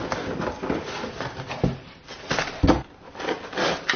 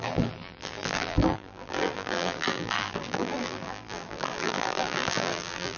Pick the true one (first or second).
first